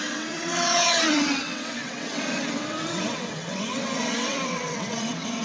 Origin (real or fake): fake